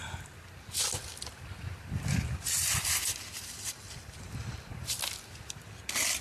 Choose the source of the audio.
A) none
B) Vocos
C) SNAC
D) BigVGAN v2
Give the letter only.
D